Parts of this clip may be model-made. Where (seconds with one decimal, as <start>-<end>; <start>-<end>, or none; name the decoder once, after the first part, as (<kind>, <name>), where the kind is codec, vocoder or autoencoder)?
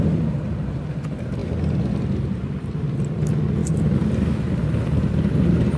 1.4-2.2 (vocoder, BigVGAN v2); 3.6-4.1